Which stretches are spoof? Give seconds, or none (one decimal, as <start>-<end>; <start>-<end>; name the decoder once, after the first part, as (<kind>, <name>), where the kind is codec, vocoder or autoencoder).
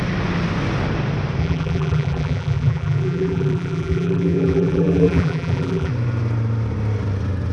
1.4-5.9 (vocoder, BigVGAN v2)